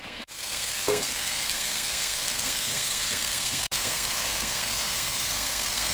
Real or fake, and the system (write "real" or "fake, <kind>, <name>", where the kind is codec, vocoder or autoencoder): fake, codec, SNAC